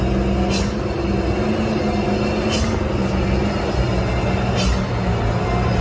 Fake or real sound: real